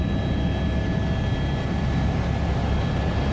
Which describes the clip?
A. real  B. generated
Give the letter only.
A